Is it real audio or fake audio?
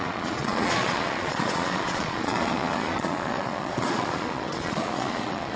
fake